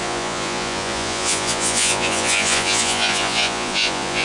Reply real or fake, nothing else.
fake